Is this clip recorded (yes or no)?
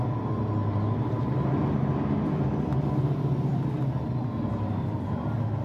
yes